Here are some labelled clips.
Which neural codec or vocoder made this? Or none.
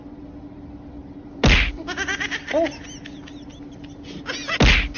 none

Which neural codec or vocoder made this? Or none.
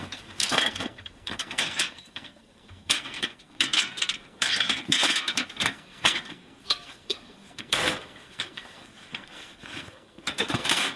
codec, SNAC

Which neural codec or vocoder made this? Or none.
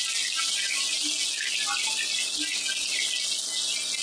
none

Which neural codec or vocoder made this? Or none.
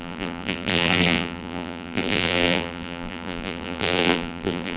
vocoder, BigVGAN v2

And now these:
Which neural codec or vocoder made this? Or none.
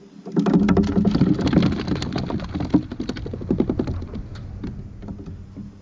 none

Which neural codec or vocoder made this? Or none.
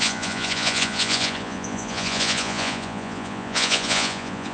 vocoder, Vocos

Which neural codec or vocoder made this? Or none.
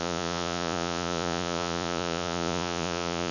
vocoder, Vocos